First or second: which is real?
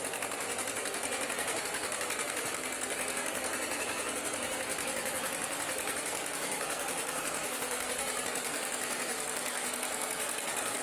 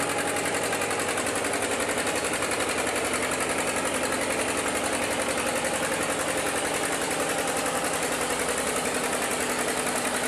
second